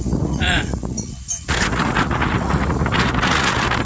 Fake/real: fake